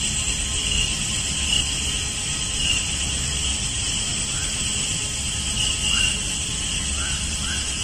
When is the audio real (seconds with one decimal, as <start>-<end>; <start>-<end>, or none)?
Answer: 0.0-3.5; 4.0-7.8